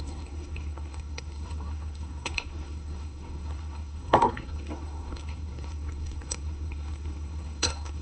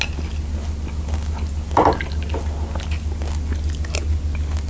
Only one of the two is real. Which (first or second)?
second